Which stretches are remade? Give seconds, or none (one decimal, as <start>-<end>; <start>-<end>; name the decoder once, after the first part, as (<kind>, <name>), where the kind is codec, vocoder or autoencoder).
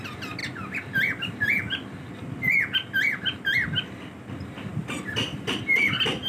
none